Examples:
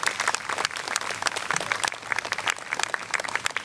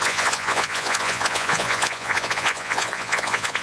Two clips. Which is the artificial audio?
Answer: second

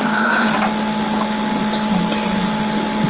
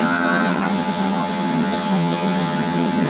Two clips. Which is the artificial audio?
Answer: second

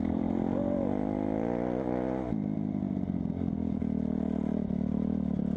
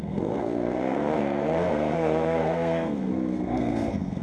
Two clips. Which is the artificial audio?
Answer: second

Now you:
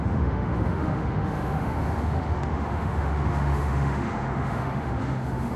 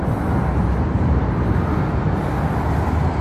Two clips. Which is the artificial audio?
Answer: first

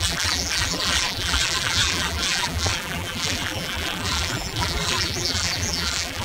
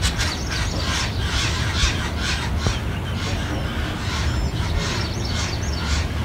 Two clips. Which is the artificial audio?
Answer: first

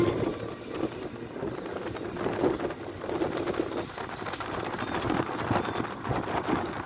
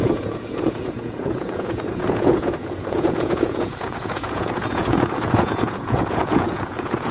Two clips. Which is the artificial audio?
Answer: second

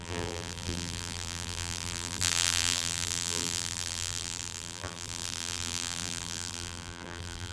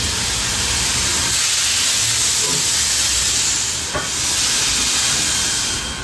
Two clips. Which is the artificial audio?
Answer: first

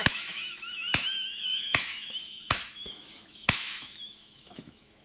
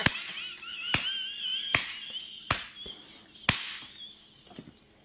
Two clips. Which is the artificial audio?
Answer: first